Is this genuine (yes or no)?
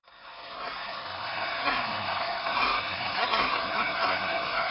no